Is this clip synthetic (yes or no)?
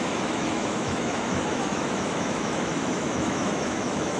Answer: yes